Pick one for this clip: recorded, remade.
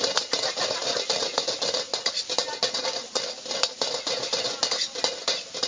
recorded